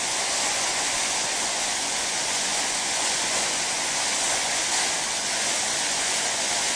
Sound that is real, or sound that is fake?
fake